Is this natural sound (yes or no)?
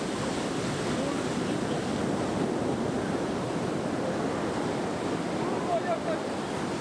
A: yes